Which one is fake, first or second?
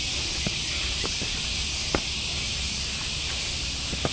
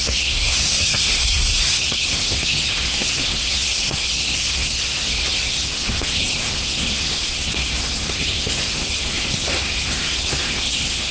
second